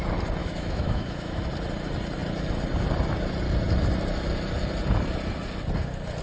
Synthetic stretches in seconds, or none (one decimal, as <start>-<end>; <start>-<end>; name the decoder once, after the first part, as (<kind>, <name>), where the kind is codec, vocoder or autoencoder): 0.4-1.4 (autoencoder, DAC-VAE)